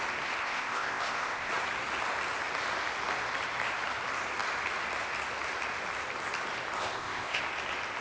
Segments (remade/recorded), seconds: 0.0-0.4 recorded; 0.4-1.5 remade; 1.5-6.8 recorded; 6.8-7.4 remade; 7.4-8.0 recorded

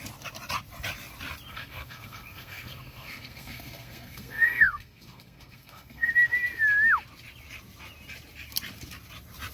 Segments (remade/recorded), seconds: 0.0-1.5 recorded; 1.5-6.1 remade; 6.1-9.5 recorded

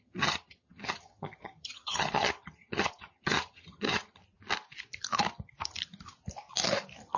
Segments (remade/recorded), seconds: 0.0-4.2 remade; 4.2-7.2 recorded

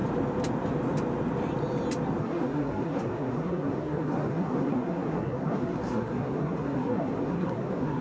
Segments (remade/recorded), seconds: 0.0-2.2 recorded; 2.2-8.0 remade